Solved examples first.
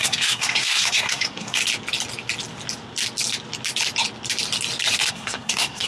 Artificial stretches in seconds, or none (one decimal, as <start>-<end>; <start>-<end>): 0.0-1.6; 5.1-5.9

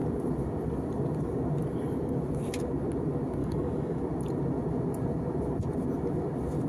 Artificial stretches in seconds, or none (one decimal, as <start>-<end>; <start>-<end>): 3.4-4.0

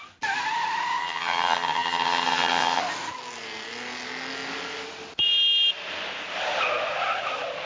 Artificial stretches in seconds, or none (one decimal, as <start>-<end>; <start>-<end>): 1.0-2.8

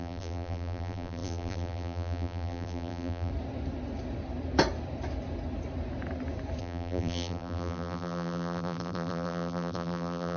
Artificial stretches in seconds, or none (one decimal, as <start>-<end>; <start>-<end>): 0.0-3.3; 6.6-10.4

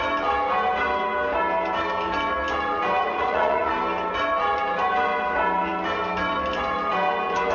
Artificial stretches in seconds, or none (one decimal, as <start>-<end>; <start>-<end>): 3.0-3.7